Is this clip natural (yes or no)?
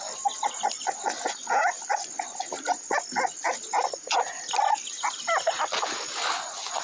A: yes